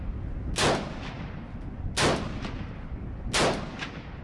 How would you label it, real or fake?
real